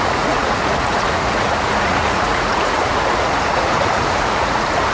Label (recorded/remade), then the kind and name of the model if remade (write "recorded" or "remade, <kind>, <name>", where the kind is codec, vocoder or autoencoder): remade, vocoder, Vocos